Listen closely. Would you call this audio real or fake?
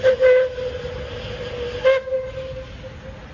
real